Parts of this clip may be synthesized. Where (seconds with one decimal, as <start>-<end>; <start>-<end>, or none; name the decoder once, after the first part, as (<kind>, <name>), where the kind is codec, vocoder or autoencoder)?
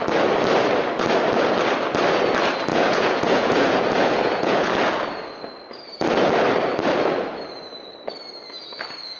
2.7-4.7 (vocoder, Vocos)